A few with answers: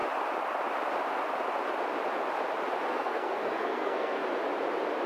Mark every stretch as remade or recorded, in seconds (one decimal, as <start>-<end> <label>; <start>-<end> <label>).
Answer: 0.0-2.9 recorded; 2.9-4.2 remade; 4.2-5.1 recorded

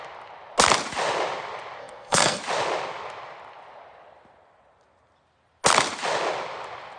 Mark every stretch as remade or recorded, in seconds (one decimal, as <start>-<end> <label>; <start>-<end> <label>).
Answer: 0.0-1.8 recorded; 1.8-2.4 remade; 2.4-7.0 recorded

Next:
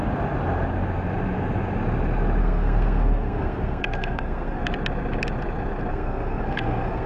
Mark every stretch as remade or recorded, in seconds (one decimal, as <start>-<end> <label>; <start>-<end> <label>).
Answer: 0.0-2.4 recorded; 2.4-4.6 remade; 4.6-5.9 recorded; 5.9-7.1 remade

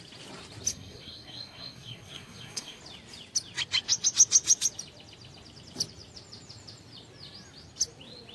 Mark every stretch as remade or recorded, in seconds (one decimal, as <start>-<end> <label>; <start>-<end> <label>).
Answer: 0.0-0.7 recorded; 0.7-2.8 remade; 2.8-8.3 recorded

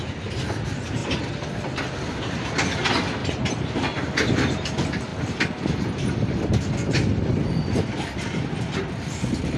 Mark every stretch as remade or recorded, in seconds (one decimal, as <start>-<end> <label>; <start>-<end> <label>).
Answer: 0.0-9.6 recorded

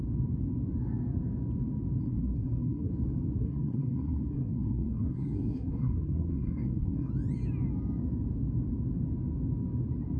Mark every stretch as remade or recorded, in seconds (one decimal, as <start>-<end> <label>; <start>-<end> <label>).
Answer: 0.0-2.0 recorded; 2.0-2.9 remade; 2.9-3.4 recorded; 3.4-7.1 remade; 7.1-10.2 recorded

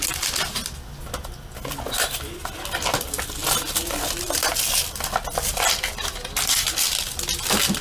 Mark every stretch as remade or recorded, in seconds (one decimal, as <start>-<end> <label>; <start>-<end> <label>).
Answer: 0.0-7.8 recorded

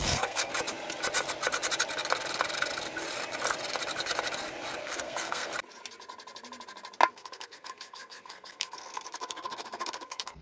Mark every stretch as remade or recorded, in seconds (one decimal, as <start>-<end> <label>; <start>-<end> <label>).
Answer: 0.0-0.5 remade; 0.5-4.8 recorded; 4.8-5.5 remade; 5.5-7.1 recorded; 7.1-10.4 remade